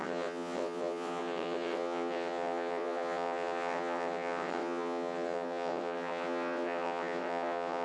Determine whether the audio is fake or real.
fake